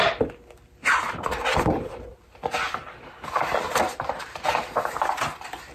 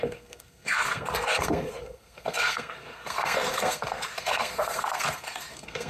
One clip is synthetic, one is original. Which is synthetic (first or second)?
second